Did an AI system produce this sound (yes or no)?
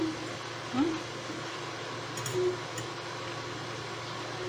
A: no